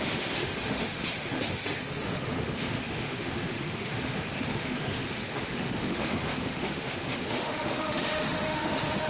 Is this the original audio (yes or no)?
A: no